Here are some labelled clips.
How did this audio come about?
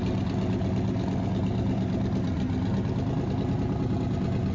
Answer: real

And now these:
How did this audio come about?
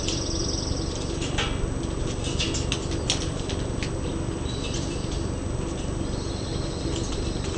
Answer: real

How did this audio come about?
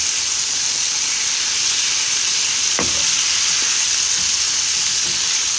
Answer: real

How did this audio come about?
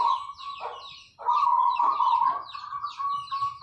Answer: real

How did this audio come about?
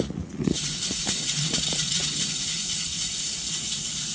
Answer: fake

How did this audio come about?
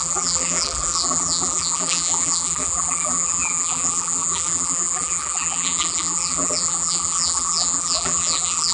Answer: fake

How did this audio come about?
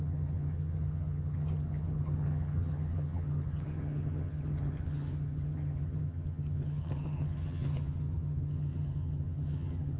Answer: fake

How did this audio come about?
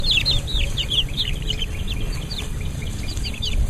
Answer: fake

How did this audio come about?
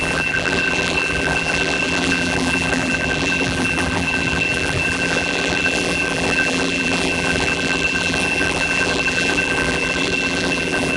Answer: fake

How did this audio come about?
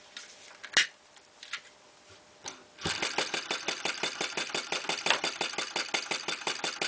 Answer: real